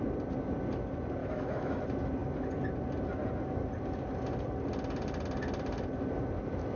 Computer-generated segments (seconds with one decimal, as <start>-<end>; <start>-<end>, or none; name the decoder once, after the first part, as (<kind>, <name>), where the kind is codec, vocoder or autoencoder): 1.2-1.8 (autoencoder, DAC-VAE)